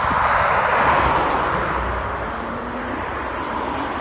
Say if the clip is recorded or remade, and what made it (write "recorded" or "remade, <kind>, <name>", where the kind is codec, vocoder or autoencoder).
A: recorded